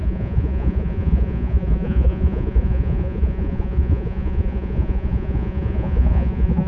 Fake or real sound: fake